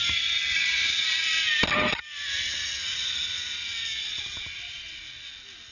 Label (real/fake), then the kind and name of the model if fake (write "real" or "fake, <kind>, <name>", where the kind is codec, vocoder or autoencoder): real